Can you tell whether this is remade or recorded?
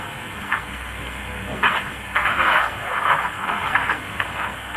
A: remade